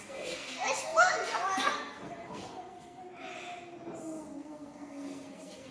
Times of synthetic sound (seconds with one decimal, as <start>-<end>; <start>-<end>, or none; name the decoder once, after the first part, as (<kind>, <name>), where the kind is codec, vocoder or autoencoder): 0.0-3.0 (codec, SNAC); 4.0-5.7